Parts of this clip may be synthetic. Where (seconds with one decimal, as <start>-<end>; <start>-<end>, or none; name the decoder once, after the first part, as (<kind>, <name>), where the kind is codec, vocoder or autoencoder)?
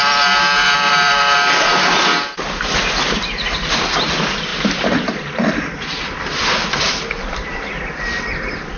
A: 0.0-2.1 (vocoder, BigVGAN v2); 3.0-4.5; 6.2-8.8